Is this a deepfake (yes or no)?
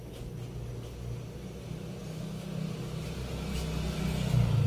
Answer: no